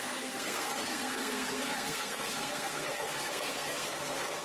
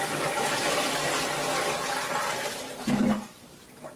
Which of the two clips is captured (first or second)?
second